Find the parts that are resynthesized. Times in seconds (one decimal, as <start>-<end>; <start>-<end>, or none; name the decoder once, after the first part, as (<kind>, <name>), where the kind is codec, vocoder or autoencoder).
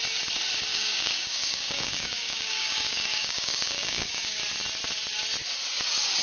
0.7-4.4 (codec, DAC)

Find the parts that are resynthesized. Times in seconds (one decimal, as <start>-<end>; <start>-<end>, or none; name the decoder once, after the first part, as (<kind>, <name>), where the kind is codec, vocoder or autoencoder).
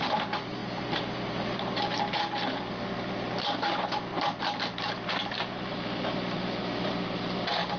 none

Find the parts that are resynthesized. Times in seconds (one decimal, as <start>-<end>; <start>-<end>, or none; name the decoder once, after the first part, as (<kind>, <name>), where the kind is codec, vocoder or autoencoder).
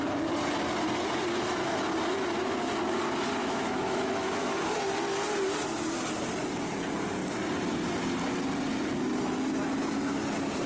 3.4-4.8 (autoencoder, DAC-VAE)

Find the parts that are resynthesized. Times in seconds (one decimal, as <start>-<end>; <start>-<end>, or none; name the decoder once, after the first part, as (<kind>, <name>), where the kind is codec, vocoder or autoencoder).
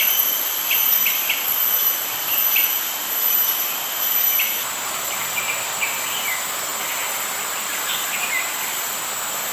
1.6-6.0 (vocoder, BigVGAN v2)